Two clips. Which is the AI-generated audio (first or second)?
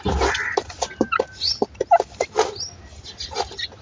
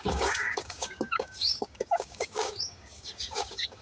second